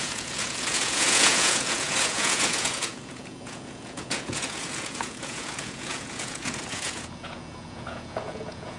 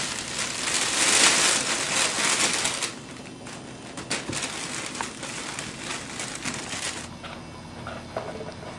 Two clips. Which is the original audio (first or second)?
second